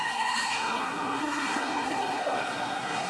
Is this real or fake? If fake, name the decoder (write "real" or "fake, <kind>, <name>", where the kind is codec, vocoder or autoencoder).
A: fake, codec, SNAC